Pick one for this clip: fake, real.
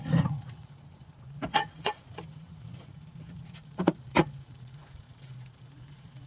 fake